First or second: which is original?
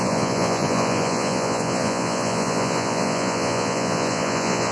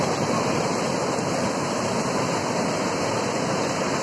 second